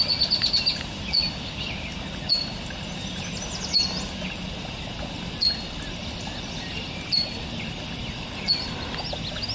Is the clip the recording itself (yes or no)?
yes